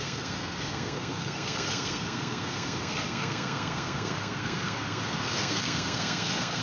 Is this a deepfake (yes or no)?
yes